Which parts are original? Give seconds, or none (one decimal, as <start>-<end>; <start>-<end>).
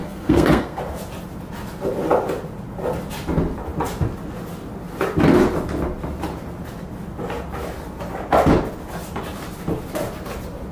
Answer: 0.8-10.7